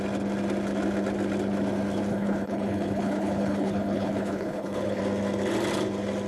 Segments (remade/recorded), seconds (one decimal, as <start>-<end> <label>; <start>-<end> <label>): 0.0-2.1 recorded; 2.1-5.0 remade; 5.0-6.3 recorded